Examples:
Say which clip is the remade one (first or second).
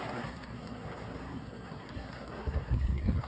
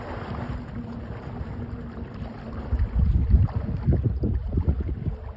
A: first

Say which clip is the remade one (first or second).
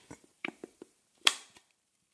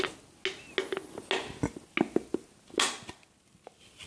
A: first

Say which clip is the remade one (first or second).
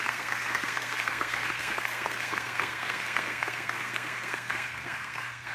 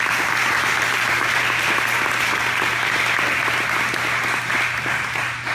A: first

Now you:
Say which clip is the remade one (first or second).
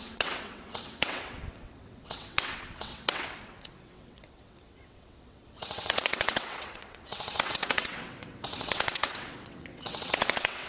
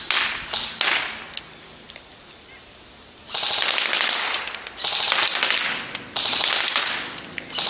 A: first